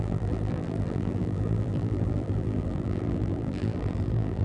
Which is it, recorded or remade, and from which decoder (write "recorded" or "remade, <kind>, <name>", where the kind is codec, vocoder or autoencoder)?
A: remade, vocoder, BigVGAN v2